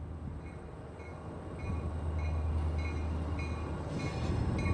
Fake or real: real